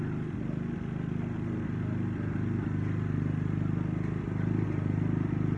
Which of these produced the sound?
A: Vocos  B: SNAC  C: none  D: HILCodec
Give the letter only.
C